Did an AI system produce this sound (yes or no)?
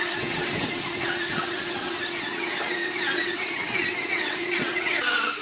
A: yes